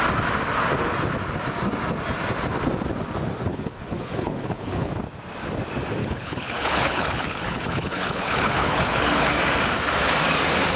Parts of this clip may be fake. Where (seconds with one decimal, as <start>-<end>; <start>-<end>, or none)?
3.5-4.9; 6.0-9.3